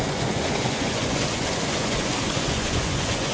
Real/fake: fake